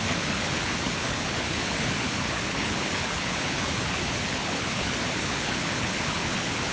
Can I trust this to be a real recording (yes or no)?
no